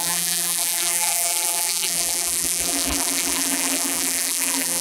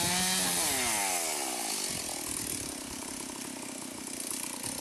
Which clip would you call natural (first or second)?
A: second